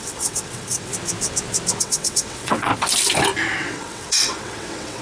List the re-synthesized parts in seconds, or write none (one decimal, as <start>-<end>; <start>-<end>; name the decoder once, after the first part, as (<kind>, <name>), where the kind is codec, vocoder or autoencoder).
0.0-0.9 (vocoder, WaveNeXt); 1.8-2.7; 3.6-5.0